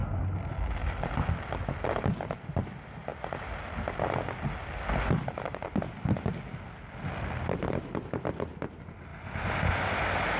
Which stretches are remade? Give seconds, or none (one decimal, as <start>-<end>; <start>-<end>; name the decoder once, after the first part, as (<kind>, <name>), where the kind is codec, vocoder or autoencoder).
none